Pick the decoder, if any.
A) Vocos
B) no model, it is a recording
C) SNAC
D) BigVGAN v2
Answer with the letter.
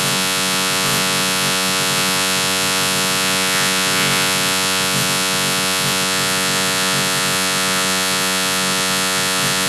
A